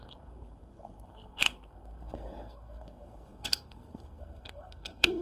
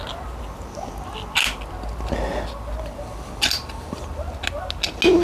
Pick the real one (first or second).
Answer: second